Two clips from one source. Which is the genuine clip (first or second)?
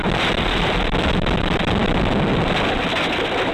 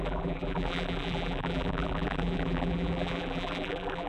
first